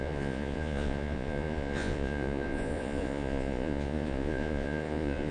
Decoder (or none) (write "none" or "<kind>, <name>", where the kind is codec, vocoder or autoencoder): vocoder, Vocos